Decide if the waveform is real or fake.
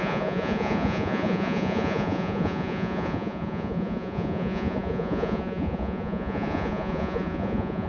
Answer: fake